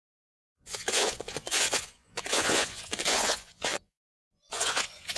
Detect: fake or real fake